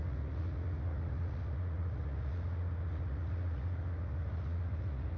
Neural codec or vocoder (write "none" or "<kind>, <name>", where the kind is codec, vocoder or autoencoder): vocoder, Vocos